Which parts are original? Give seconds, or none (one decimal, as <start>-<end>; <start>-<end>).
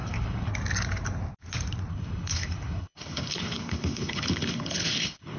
0.5-1.9